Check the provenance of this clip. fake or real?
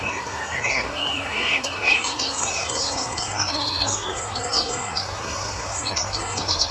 fake